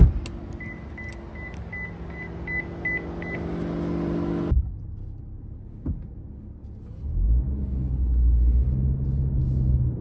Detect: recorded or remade recorded